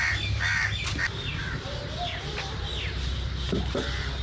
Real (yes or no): yes